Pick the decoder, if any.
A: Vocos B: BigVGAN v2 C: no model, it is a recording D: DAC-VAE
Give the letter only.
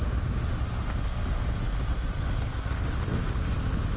C